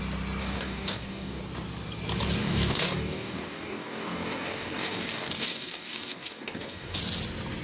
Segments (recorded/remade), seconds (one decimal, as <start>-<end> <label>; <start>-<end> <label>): 0.0-0.4 recorded; 0.4-1.4 remade; 1.4-2.4 recorded; 2.4-7.0 remade; 7.0-7.6 recorded